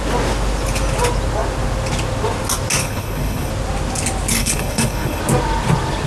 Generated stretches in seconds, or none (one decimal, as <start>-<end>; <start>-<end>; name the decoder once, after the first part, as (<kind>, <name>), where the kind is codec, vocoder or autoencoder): 2.8-3.5 (codec, HILCodec); 4.4-5.2